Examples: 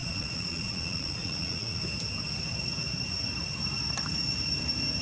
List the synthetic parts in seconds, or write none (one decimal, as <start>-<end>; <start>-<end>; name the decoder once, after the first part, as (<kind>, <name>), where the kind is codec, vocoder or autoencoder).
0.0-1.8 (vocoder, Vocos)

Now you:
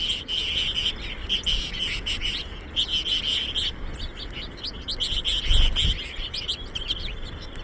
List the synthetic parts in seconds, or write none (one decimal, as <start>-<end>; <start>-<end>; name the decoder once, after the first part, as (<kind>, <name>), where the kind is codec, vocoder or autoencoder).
none

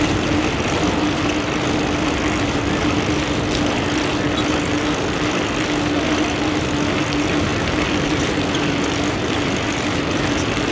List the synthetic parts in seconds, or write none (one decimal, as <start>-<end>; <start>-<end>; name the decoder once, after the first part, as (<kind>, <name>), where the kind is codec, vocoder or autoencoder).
none

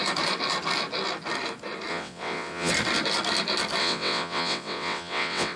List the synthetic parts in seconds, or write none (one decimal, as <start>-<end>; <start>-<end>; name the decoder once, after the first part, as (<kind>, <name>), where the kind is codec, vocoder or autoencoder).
1.9-2.7 (vocoder, WaveNeXt); 3.8-5.6

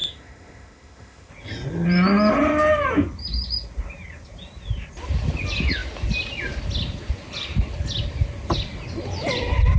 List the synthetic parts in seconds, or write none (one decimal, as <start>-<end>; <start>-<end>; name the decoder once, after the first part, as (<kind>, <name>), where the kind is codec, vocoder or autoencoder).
0.0-1.3 (autoencoder, DAC-VAE)

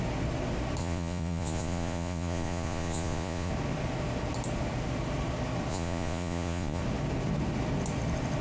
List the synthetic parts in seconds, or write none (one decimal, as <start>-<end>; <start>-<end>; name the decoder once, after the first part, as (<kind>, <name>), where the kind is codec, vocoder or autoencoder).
0.8-3.5 (vocoder, Vocos); 5.7-6.8